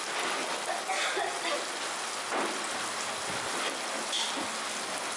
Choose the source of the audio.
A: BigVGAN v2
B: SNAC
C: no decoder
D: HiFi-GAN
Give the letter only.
C